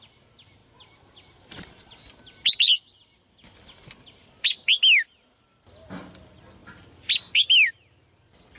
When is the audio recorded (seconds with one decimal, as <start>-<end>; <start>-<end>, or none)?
0.0-8.6